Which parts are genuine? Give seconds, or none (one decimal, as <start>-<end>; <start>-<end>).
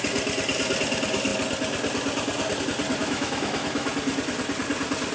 0.0-3.0; 3.9-5.1